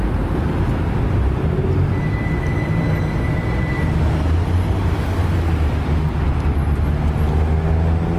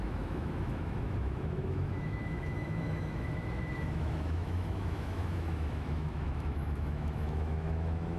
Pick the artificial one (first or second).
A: second